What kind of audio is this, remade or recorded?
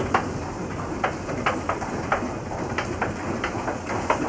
recorded